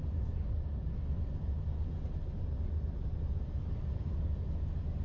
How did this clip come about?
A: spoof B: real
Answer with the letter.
B